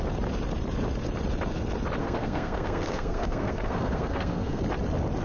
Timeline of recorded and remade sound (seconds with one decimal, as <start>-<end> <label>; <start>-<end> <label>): 0.0-2.0 recorded; 2.0-4.6 remade; 4.6-5.2 recorded